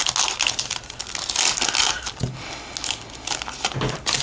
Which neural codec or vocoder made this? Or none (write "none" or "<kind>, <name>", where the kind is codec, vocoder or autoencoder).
none